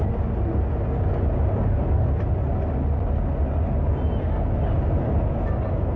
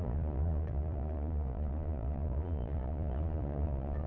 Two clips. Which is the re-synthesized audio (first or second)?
second